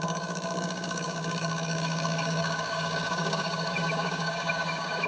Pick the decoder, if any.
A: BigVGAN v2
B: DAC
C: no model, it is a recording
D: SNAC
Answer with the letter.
B